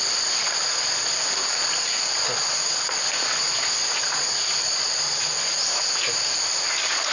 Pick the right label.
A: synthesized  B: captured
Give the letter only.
B